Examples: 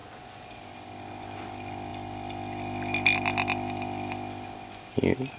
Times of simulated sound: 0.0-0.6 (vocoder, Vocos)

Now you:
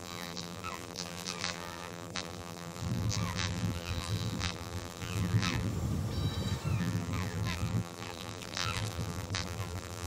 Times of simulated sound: 0.0-5.7 (vocoder, BigVGAN v2); 6.8-10.1

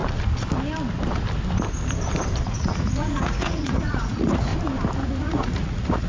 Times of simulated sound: 2.4-4.5 (vocoder, Vocos); 5.2-6.1

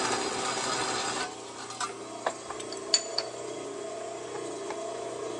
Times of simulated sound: 3.1-5.4 (vocoder, Vocos)

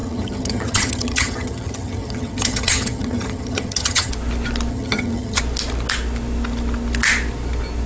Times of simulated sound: 0.0-4.1 (vocoder, HiFi-GAN); 4.7-5.4

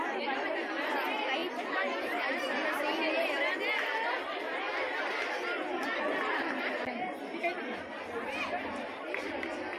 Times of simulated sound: none